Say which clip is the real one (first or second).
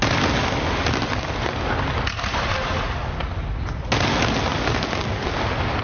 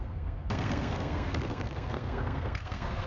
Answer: first